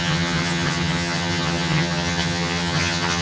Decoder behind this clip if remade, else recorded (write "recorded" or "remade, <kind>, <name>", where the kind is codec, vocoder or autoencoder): remade, vocoder, HiFi-GAN